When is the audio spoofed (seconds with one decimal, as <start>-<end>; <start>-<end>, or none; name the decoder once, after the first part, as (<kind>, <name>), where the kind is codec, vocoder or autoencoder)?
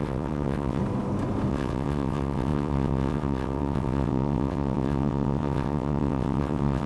0.0-0.8 (vocoder, WaveNeXt); 1.5-6.9